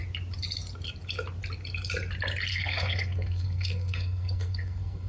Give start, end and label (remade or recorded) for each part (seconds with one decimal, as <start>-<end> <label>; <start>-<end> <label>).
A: 0.0-2.5 recorded; 2.5-5.1 remade